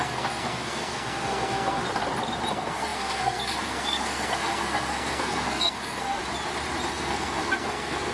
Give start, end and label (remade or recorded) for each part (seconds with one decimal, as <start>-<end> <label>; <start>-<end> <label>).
0.0-1.8 remade; 1.8-2.5 recorded; 2.5-6.2 remade; 6.2-6.9 recorded; 6.9-8.1 remade